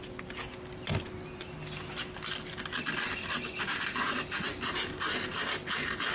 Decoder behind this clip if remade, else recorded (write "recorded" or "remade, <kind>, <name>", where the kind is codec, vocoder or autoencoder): recorded